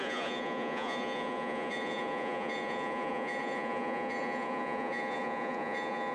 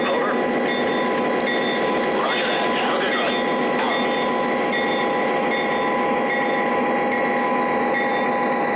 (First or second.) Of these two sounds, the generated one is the first